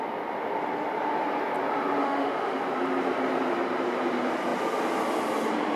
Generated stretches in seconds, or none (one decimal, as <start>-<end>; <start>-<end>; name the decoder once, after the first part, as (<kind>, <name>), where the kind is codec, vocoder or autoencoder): 2.0-2.6 (autoencoder, DAC-VAE)